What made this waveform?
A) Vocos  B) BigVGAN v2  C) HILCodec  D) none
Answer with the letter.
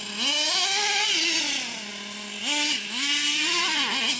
D